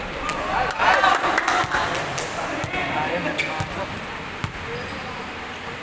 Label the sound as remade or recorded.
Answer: recorded